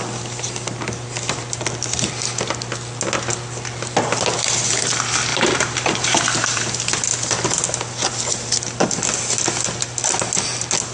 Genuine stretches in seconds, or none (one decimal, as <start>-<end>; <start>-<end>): 0.0-5.3; 6.6-10.9